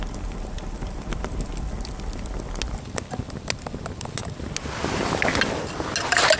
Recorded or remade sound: recorded